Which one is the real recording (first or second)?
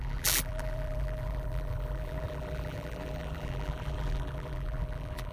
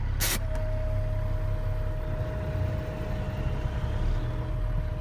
second